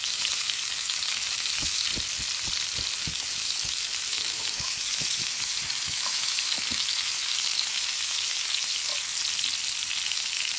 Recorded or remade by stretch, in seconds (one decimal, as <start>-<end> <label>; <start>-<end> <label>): 0.0-1.9 remade; 1.9-3.0 recorded; 3.0-8.9 remade; 8.9-10.1 recorded; 10.1-10.6 remade